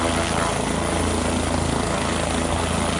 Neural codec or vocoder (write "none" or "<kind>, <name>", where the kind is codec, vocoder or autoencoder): none